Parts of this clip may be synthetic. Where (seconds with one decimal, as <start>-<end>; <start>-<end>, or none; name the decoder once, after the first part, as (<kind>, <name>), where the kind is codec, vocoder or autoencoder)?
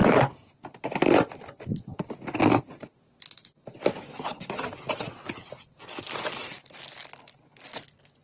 none